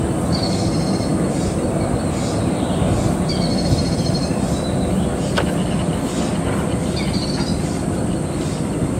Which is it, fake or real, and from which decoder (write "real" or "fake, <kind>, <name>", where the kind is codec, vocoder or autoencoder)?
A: real